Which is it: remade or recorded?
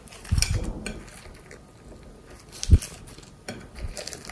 recorded